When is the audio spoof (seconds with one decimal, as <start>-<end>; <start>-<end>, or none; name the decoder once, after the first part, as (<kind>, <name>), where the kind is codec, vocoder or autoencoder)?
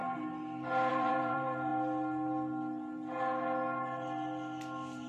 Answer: 0.9-1.7 (vocoder, BigVGAN v2)